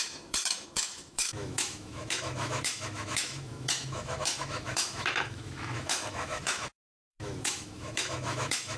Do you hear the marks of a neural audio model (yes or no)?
yes